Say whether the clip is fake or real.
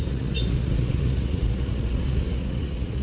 fake